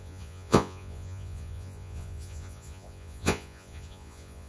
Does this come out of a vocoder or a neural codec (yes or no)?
yes